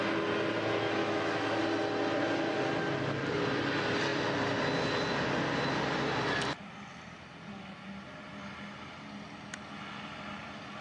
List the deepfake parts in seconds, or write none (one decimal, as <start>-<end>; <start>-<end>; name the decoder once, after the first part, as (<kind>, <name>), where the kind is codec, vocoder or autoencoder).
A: 1.0-1.6 (autoencoder, DAC-VAE)